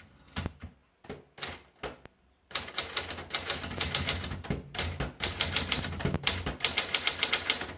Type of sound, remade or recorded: recorded